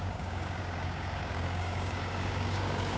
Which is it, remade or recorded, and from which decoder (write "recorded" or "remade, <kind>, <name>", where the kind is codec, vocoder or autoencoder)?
remade, codec, DAC